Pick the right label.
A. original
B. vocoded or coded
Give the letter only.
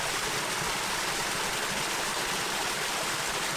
A